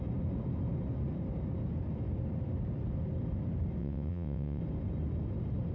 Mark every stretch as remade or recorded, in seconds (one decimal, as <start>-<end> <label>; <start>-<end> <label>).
0.0-3.8 recorded; 3.8-4.6 remade; 4.6-5.7 recorded